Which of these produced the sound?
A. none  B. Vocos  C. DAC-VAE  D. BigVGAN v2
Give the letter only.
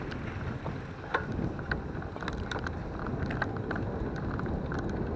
A